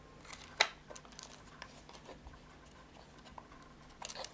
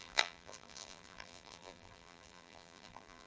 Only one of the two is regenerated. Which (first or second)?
second